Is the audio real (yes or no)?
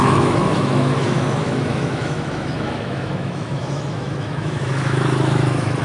no